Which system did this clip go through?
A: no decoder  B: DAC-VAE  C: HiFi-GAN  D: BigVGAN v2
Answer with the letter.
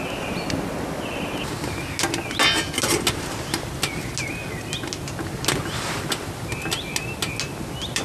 A